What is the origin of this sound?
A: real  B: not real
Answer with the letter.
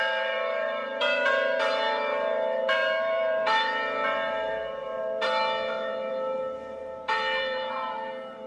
B